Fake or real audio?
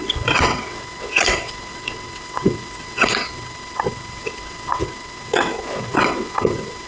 fake